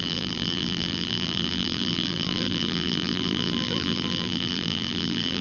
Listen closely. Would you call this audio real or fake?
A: fake